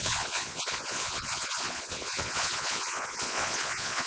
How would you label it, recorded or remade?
remade